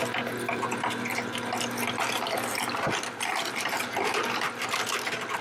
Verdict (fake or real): real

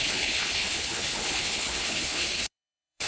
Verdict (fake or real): fake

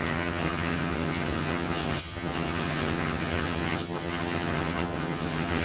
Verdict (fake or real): fake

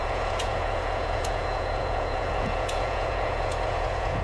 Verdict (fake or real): fake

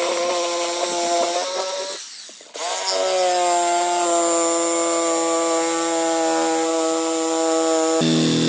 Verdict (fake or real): real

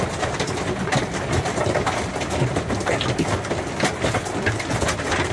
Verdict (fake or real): real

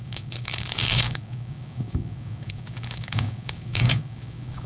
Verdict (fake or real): fake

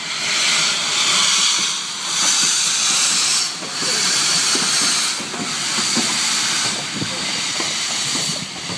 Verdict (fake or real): real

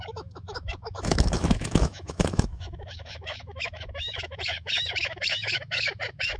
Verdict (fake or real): fake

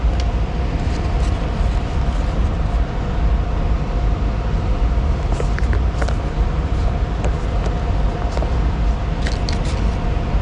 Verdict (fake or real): real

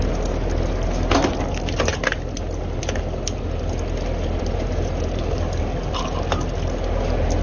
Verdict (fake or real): real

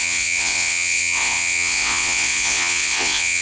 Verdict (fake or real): fake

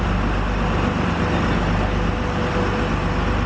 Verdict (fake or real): real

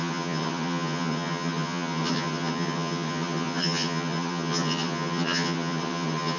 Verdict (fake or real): fake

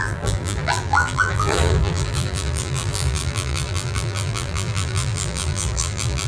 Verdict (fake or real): fake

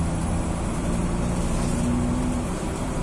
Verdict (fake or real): real